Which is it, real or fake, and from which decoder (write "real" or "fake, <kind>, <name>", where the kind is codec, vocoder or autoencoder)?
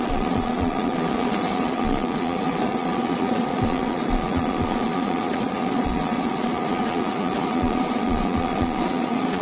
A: fake, vocoder, Vocos